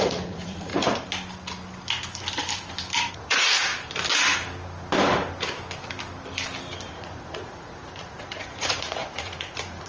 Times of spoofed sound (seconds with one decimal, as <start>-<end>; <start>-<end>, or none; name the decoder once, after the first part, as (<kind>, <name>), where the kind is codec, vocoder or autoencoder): 0.0-0.7 (vocoder, Vocos); 3.1-3.7; 6.9-9.9